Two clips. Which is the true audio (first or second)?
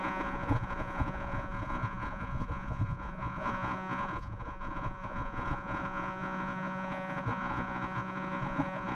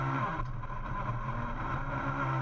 second